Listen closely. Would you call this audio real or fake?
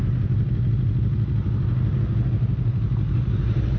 real